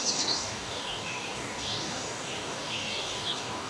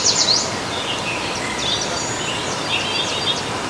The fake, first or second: first